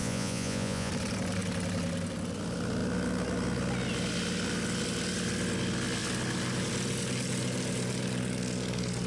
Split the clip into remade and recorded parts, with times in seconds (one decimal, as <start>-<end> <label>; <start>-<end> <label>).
0.0-0.9 remade; 0.9-9.1 recorded